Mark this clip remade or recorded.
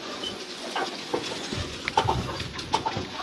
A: remade